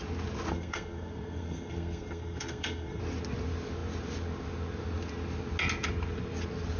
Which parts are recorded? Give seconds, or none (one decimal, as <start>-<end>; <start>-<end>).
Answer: 0.0-0.5; 3.0-6.8